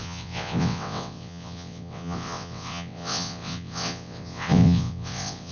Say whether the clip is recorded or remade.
remade